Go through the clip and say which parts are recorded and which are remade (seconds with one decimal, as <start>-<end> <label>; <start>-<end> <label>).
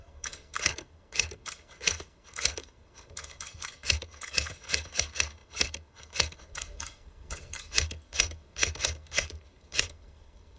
0.0-10.6 remade